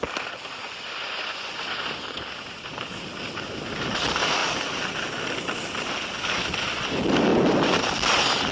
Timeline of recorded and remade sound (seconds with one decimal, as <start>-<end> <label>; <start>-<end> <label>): 0.0-0.6 recorded; 0.6-1.6 remade; 1.6-8.5 recorded